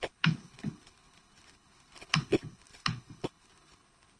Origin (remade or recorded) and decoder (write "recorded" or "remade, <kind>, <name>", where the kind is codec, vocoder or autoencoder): remade, codec, HILCodec